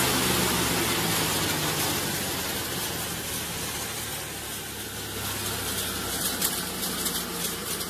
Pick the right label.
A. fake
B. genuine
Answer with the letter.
B